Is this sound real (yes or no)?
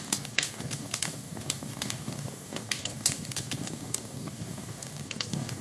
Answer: no